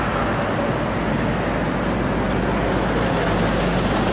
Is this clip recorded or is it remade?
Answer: recorded